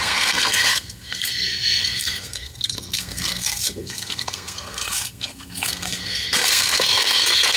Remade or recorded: remade